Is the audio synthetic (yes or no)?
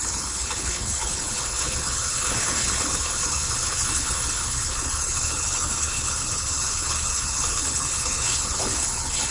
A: yes